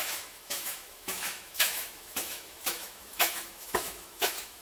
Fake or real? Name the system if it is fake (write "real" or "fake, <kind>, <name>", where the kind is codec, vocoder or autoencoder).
fake, autoencoder, DAC-VAE